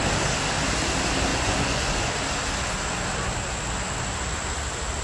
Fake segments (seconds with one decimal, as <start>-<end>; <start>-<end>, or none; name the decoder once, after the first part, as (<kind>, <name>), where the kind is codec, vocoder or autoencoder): 1.3-2.1 (vocoder, Vocos)